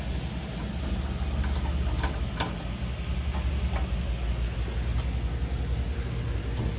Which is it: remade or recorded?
recorded